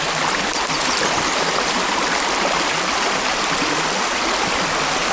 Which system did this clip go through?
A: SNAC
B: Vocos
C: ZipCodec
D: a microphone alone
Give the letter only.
D